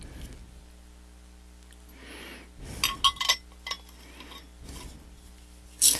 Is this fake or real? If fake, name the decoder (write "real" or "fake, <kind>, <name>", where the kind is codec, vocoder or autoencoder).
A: real